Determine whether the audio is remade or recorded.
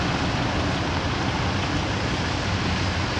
recorded